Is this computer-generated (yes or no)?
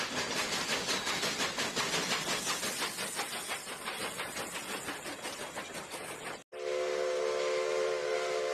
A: no